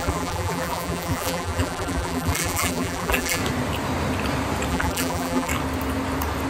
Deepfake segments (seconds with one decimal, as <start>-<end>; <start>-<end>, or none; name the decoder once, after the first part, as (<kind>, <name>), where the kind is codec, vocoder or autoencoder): 0.0-3.4 (vocoder, BigVGAN v2); 4.7-5.5